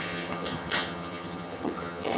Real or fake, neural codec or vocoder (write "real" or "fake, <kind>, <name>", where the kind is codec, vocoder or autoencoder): fake, vocoder, HiFi-GAN